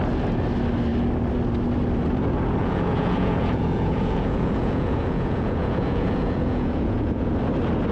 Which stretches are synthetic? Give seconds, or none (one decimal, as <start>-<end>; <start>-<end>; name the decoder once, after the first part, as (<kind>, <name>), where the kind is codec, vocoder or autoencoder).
2.6-7.3 (vocoder, Vocos)